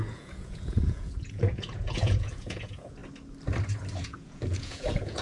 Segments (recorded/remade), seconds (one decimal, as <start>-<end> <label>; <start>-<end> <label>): 0.0-3.0 remade; 3.0-4.0 recorded; 4.0-5.2 remade